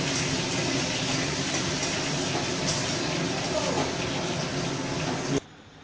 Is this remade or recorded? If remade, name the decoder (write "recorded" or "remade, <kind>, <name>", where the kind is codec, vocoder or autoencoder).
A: recorded